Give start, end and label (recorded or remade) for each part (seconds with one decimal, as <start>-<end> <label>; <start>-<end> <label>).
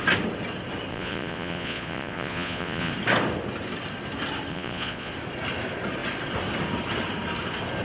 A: 0.0-0.9 recorded; 0.9-2.9 remade; 2.9-4.5 recorded; 4.5-5.1 remade; 5.1-7.8 recorded